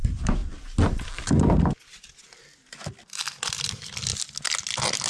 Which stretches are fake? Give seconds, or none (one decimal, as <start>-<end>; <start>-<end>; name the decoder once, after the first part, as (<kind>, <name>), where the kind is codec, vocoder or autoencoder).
0.0-0.4 (vocoder, BigVGAN v2); 3.5-4.1